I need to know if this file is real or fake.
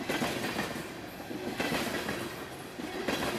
real